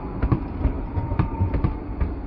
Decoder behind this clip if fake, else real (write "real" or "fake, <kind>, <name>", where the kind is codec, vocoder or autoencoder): real